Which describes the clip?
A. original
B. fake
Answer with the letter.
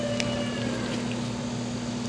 A